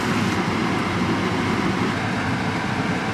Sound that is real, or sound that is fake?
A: real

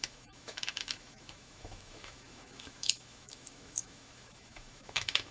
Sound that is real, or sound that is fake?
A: fake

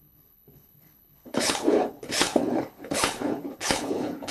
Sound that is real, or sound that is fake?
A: fake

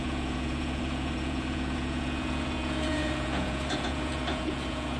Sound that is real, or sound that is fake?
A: fake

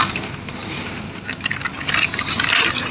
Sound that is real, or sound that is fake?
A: real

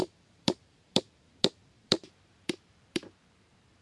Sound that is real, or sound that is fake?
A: fake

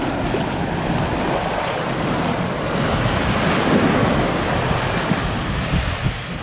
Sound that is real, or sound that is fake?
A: real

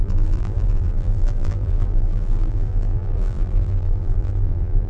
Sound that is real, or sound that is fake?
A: fake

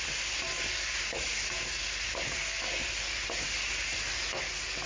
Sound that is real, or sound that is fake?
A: real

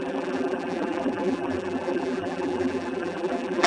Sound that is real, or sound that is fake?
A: fake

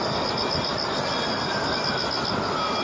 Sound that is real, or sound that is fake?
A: real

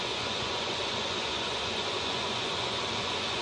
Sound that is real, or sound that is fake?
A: fake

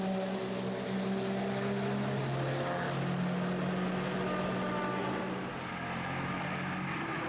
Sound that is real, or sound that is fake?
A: real